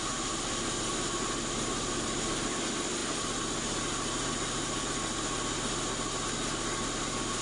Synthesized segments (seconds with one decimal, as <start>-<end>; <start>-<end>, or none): none